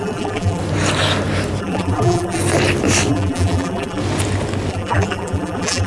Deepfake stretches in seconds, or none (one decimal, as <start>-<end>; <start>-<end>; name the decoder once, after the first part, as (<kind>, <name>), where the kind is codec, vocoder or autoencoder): 0.0-0.6 (vocoder, BigVGAN v2); 1.6-2.4; 3.1-4.0; 4.7-5.9